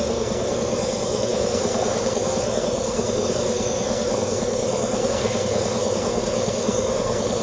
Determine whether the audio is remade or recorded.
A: remade